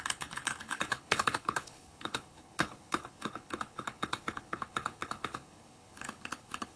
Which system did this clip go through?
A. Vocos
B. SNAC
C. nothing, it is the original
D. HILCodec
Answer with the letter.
D